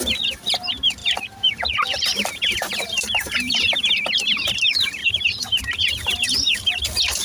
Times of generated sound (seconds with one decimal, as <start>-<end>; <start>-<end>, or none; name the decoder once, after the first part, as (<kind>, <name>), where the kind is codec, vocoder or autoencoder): 1.0-3.9 (vocoder, BigVGAN v2); 5.0-6.1